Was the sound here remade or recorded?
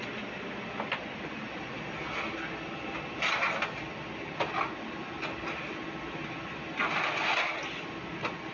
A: recorded